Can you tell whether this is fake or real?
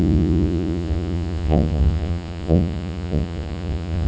fake